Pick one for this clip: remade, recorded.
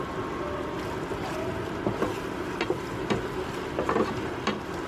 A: recorded